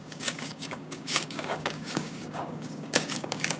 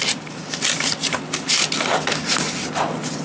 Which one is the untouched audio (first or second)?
second